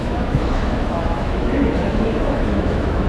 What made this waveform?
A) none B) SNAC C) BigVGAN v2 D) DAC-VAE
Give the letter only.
D